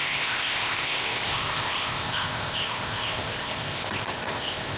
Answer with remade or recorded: remade